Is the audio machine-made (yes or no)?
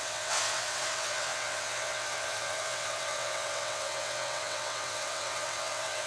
yes